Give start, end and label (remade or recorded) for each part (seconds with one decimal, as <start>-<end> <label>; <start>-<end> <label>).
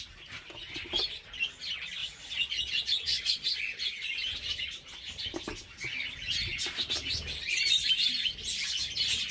0.0-2.0 recorded; 2.0-3.6 remade; 3.6-9.3 recorded